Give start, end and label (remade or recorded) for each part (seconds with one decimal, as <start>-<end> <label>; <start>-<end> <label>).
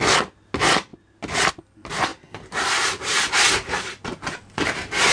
0.0-5.1 recorded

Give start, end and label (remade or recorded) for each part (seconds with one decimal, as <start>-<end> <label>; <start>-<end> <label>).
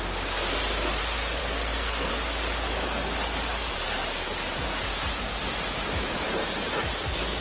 0.0-1.4 recorded; 1.4-2.1 remade; 2.1-7.4 recorded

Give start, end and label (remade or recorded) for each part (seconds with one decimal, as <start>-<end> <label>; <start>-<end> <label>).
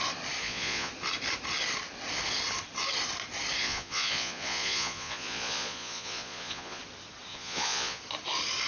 0.0-0.4 recorded; 0.4-0.9 remade; 0.9-3.6 recorded; 3.6-6.8 remade; 6.8-7.3 recorded; 7.3-8.0 remade; 8.0-8.7 recorded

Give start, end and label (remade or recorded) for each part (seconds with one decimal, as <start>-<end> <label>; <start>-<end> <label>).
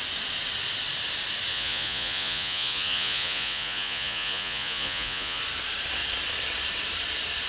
0.0-1.5 recorded; 1.5-5.4 remade; 5.4-7.5 recorded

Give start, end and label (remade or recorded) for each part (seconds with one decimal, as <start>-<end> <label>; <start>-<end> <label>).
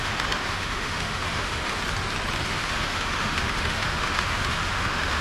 0.0-1.8 remade; 1.8-2.4 recorded; 2.4-5.2 remade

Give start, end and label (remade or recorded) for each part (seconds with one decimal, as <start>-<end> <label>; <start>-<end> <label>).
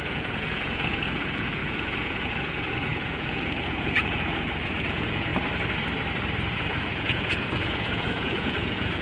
0.0-5.3 remade; 5.3-6.7 recorded; 6.7-9.0 remade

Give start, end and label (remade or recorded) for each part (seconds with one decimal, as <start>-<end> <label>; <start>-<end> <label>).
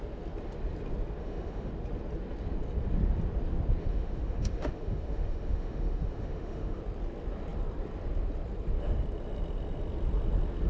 0.0-1.2 recorded; 1.2-1.7 remade; 1.7-3.8 recorded; 3.8-6.8 remade; 6.8-10.7 recorded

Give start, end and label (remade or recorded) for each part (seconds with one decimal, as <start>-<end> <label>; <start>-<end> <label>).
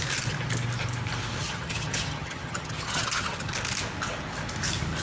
0.0-1.4 recorded; 1.4-3.5 remade; 3.5-5.0 recorded